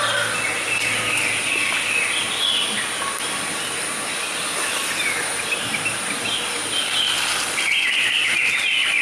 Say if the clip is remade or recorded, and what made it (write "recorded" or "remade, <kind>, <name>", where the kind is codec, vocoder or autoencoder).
recorded